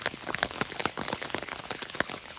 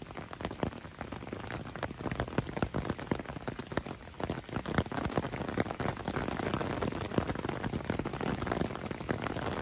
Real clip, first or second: second